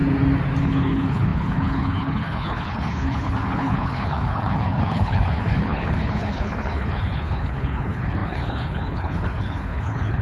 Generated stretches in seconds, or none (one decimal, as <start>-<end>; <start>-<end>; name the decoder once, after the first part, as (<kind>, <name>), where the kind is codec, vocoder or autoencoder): 0.6-10.2 (codec, HILCodec)